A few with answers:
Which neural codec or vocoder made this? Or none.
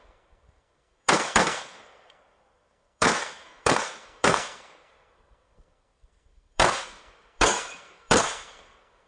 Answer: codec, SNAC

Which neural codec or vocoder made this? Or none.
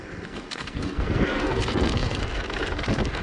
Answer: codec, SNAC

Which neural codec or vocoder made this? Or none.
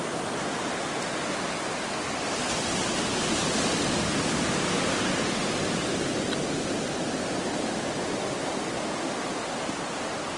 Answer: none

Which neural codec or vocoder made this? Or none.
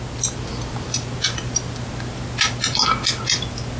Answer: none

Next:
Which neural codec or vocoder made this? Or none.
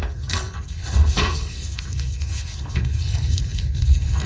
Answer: codec, SNAC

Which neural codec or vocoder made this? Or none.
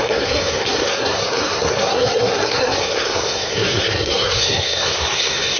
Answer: codec, SNAC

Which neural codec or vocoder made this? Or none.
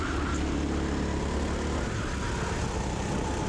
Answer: none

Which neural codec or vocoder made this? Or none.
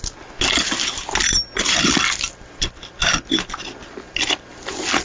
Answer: none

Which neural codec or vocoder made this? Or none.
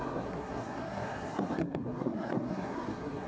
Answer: codec, SNAC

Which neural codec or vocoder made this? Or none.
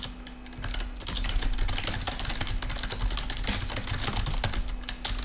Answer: none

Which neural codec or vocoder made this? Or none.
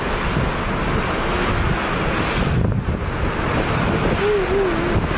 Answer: none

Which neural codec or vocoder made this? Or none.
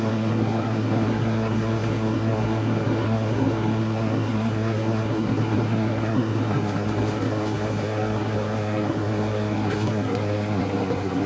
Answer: codec, SNAC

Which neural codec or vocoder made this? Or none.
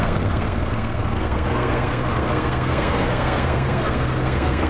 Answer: codec, SNAC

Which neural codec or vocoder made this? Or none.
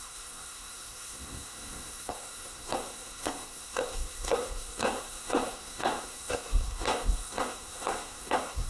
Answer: codec, SNAC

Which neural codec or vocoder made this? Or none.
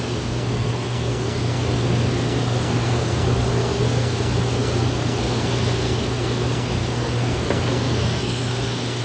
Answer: codec, SNAC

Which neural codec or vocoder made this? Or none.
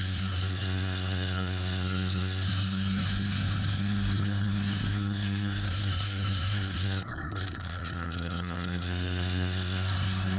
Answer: codec, SNAC